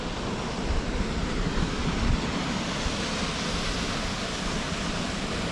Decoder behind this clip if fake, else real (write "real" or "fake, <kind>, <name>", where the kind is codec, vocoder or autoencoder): real